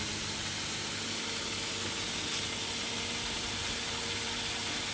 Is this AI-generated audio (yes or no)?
no